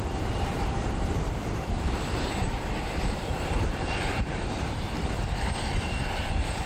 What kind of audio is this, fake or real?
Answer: fake